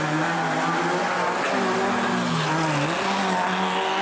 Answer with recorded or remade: recorded